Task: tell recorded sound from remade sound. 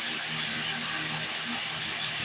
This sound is recorded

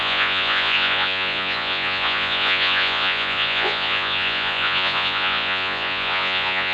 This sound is remade